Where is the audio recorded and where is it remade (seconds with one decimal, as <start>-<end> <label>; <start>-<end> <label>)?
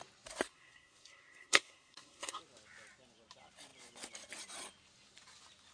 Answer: 0.0-0.5 recorded; 0.5-2.4 remade; 2.4-5.7 recorded